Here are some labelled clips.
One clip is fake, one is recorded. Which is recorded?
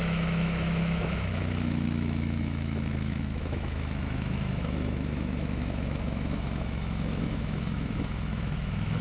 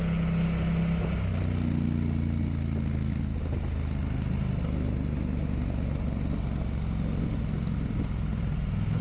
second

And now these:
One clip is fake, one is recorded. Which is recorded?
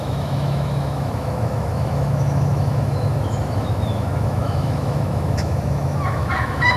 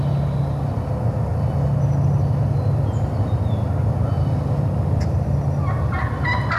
second